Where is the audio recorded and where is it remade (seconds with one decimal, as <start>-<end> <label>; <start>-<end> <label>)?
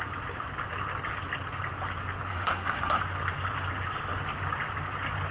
0.0-2.3 recorded; 2.3-3.0 remade; 3.0-5.3 recorded